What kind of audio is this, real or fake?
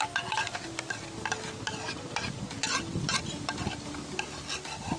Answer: real